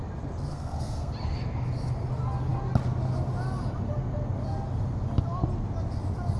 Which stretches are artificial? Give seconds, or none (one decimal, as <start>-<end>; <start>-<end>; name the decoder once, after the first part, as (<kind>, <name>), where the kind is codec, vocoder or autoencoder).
0.5-1.1 (codec, SNAC)